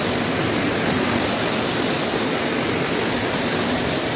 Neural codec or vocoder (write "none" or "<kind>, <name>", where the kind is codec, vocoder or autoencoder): none